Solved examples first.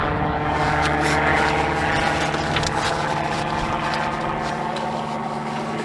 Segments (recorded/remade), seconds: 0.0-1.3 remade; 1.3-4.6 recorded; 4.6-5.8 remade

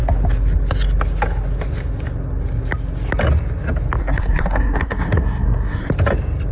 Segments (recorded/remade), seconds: 0.0-4.0 recorded; 4.0-5.9 remade; 5.9-6.5 recorded

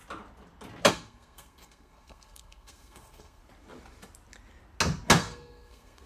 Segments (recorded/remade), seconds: 0.0-0.9 recorded; 0.9-3.4 remade; 3.4-5.2 recorded; 5.2-6.1 remade

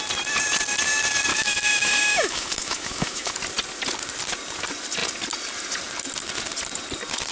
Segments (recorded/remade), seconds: 0.0-1.3 recorded; 1.3-3.3 remade; 3.3-7.3 recorded

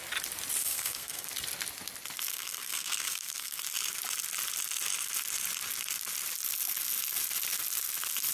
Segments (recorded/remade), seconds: 0.0-0.6 recorded; 0.6-1.3 remade; 1.3-2.3 recorded; 2.3-3.6 remade; 3.6-8.3 recorded

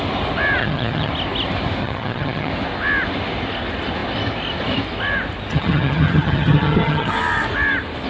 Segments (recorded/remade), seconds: 0.0-0.6 recorded; 0.6-1.1 remade; 1.1-1.8 recorded; 1.8-2.5 remade; 2.5-5.5 recorded; 5.5-7.1 remade; 7.1-8.1 recorded